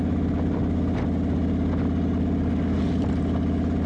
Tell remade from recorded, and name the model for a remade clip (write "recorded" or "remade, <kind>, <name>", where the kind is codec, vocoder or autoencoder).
recorded